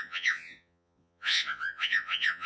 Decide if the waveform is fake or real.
fake